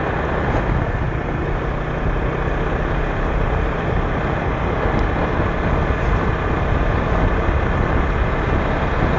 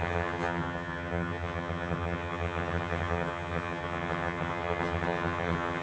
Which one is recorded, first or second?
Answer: first